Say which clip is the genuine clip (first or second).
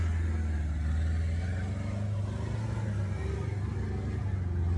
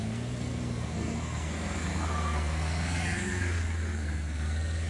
first